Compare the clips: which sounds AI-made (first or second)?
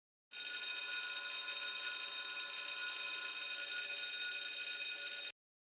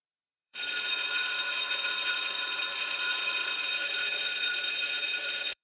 second